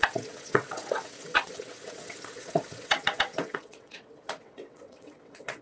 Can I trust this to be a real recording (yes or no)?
no